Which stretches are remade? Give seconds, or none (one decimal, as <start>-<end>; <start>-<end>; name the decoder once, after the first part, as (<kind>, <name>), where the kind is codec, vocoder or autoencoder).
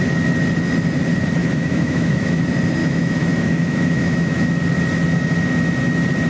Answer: 1.4-2.4 (autoencoder, DAC-VAE); 2.8-4.5